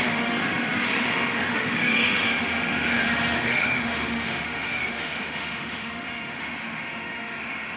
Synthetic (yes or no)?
yes